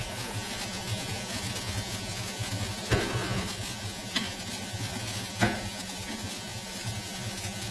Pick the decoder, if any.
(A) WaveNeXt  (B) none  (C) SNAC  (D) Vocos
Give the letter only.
D